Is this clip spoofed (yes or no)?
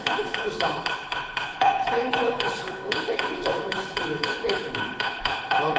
yes